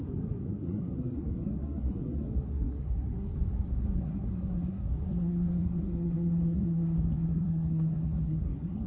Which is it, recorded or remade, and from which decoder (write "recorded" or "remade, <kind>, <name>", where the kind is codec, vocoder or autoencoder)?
remade, codec, SNAC